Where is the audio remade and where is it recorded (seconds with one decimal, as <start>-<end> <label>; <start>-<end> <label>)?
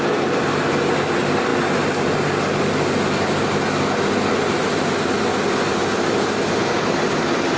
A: 0.0-7.6 recorded